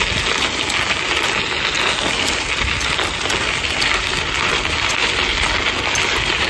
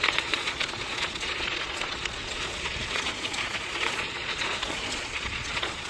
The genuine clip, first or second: first